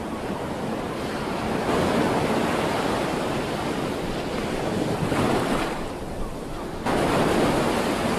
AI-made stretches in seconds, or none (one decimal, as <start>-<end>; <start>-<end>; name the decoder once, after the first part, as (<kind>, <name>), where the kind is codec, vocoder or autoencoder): 2.2-6.4 (vocoder, BigVGAN v2)